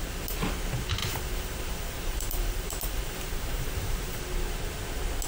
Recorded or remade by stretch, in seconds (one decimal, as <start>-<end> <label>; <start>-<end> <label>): 0.0-1.0 recorded; 1.0-4.2 remade; 4.2-5.3 recorded